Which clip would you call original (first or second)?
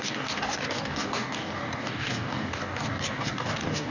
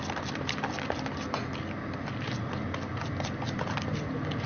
second